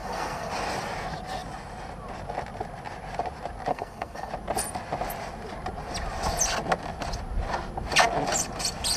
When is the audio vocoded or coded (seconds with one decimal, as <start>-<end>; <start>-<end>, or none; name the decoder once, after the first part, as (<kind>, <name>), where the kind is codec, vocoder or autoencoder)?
0.0-0.5 (codec, SNAC); 3.7-4.3